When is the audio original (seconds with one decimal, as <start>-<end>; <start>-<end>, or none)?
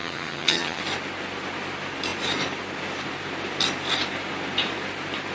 0.8-5.3